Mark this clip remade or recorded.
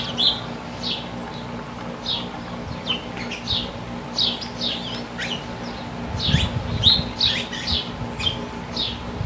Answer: recorded